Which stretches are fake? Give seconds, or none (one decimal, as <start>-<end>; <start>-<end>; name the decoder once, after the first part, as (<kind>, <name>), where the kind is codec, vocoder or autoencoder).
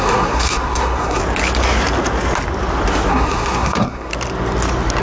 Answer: 0.0-1.2 (codec, SNAC); 3.1-4.1